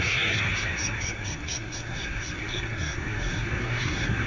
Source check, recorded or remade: remade